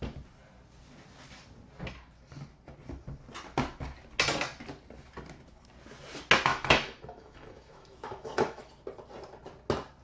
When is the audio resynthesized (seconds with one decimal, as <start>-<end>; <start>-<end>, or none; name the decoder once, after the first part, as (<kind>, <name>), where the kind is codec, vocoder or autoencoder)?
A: 6.5-8.7 (autoencoder, DAC-VAE)